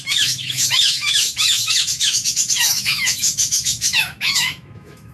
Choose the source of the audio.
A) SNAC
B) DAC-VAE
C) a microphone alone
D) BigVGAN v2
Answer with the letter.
B